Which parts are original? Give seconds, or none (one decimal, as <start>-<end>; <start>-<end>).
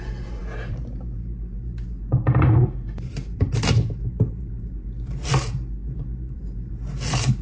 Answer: none